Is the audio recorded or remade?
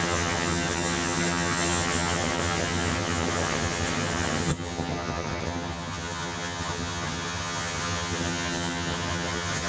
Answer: remade